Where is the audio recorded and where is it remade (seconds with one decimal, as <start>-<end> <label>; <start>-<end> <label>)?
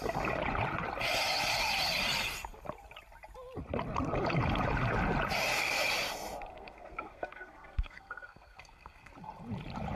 0.0-6.5 recorded; 6.5-9.1 remade; 9.1-10.0 recorded